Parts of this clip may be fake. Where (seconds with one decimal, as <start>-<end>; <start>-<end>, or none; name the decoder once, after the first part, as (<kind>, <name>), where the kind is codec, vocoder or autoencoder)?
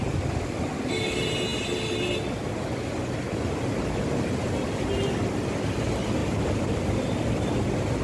6.2-6.8 (vocoder, BigVGAN v2)